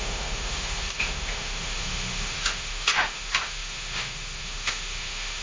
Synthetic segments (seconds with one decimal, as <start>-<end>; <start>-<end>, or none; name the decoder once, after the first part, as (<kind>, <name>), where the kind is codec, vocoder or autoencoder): 0.0-5.4 (autoencoder, DAC-VAE)